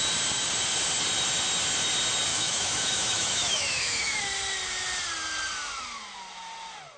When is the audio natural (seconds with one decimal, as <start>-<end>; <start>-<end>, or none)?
0.0-2.3; 4.2-7.0